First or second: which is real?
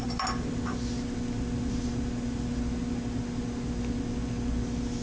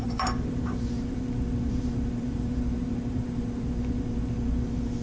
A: first